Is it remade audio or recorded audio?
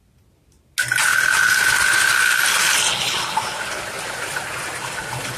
recorded